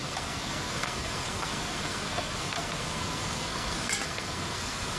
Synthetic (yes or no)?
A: yes